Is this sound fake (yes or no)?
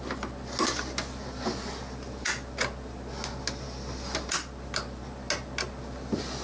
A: no